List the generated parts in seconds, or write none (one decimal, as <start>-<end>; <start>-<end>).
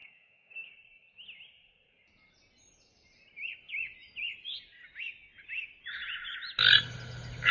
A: 0.0-0.7